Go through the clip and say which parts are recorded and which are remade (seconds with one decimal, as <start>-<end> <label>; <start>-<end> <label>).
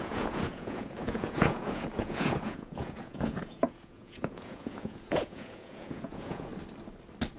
0.0-6.5 remade; 6.5-7.4 recorded